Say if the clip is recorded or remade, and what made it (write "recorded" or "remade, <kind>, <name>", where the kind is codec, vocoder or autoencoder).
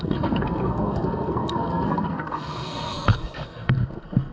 remade, codec, SNAC